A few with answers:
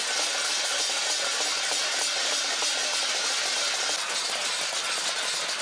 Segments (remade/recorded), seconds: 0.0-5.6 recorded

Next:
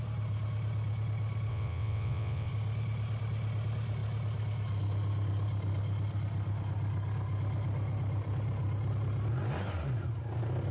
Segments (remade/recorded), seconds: 0.0-1.5 recorded; 1.5-2.5 remade; 2.5-10.7 recorded

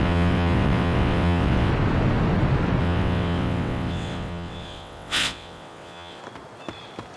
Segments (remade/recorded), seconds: 0.0-1.7 remade; 1.7-2.8 recorded; 2.8-6.2 remade; 6.2-7.2 recorded

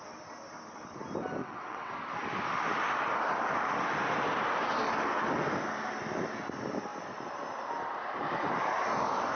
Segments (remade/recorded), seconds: 0.0-1.4 recorded; 1.4-1.9 remade; 1.9-9.3 recorded

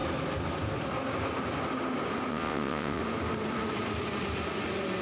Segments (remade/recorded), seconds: 0.0-2.3 recorded; 2.3-3.0 remade; 3.0-5.0 recorded